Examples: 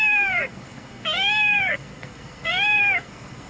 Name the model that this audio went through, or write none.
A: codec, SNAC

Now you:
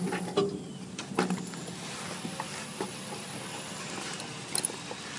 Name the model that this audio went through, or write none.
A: none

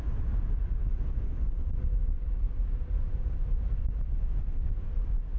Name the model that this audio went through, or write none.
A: none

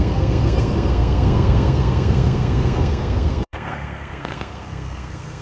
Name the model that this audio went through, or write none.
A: codec, SNAC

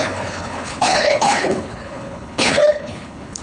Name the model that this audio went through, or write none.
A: codec, HILCodec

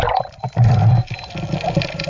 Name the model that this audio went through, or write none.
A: none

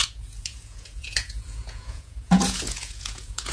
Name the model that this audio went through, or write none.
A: vocoder, Vocos